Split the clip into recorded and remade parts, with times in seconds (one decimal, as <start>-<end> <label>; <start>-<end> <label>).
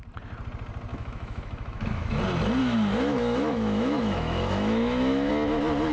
0.0-0.9 recorded; 0.9-2.2 remade; 2.2-2.6 recorded; 2.6-5.3 remade; 5.3-5.9 recorded